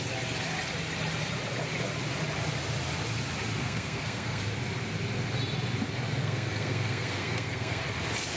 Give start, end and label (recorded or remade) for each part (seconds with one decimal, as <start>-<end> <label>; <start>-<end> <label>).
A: 0.0-3.6 recorded; 3.6-4.4 remade; 4.4-6.2 recorded; 6.2-7.8 remade; 7.8-8.4 recorded

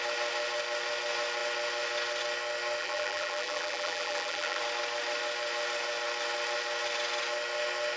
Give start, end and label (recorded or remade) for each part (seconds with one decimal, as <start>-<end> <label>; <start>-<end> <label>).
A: 0.0-2.8 recorded; 2.8-4.6 remade; 4.6-8.0 recorded

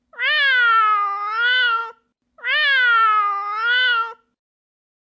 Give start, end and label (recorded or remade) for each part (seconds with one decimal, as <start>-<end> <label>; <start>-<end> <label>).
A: 0.0-5.0 recorded

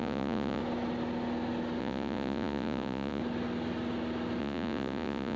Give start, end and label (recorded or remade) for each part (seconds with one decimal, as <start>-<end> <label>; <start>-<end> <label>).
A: 0.0-0.6 remade; 0.6-1.8 recorded; 1.8-3.2 remade; 3.2-4.4 recorded; 4.4-5.4 remade

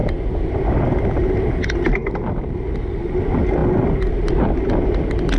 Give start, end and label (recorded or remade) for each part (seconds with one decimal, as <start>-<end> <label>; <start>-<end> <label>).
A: 0.0-5.4 recorded